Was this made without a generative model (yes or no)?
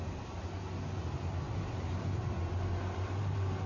yes